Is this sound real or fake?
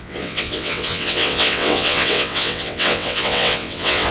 fake